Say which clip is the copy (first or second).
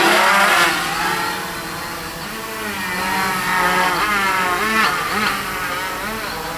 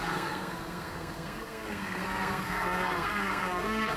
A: second